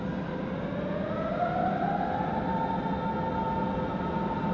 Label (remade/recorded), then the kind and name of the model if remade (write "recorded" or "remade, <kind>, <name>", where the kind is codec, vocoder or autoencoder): recorded